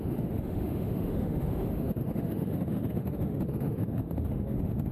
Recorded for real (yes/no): no